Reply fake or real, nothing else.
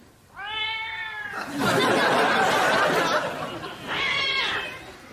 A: real